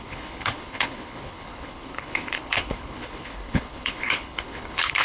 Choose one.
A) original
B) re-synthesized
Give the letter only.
B